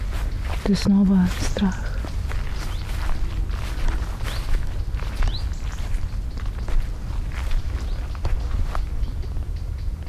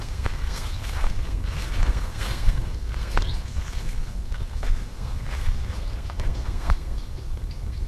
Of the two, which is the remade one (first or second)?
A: second